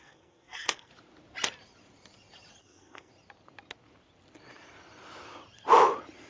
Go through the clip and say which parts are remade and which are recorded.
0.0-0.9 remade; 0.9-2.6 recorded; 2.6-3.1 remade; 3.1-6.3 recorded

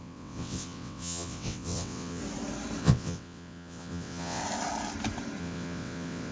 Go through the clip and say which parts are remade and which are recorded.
0.0-2.2 remade; 2.2-2.8 recorded; 2.8-4.4 remade; 4.4-5.4 recorded; 5.4-6.3 remade

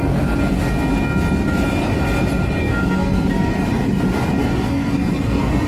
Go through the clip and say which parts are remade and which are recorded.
0.0-2.6 recorded; 2.6-3.5 remade; 3.5-4.4 recorded; 4.4-5.7 remade

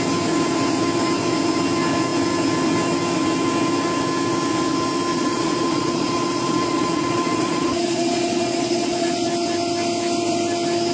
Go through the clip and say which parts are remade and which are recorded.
0.0-5.1 recorded; 5.1-9.3 remade; 9.3-10.9 recorded

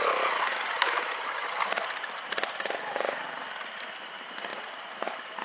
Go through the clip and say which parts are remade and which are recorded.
0.0-1.4 recorded; 1.4-3.2 remade; 3.2-4.5 recorded; 4.5-5.4 remade

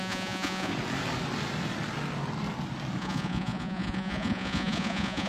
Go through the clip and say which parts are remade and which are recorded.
0.0-0.7 remade; 0.7-3.0 recorded; 3.0-5.3 remade